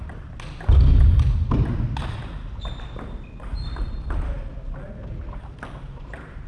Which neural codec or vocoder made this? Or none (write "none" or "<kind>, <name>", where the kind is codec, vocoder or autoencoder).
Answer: none